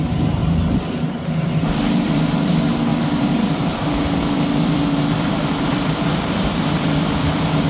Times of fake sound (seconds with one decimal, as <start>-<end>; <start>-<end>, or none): 0.4-1.1; 2.9-7.7